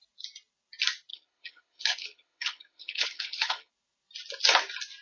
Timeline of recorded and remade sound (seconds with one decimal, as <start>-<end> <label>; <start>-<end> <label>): 0.0-1.1 recorded; 1.1-3.7 remade; 3.7-5.0 recorded